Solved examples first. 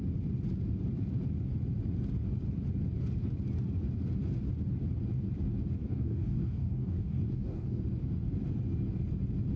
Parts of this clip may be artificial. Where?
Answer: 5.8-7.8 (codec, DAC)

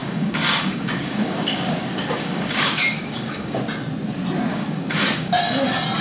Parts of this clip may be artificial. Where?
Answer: 0.0-3.6 (codec, DAC); 4.5-5.4